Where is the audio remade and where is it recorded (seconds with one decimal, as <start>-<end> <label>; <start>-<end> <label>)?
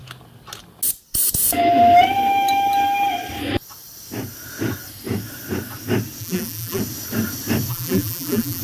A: 0.0-6.2 recorded; 6.2-6.8 remade; 6.8-7.7 recorded; 7.7-8.6 remade